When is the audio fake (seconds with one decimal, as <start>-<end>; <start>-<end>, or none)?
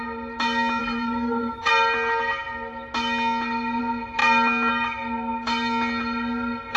0.8-1.7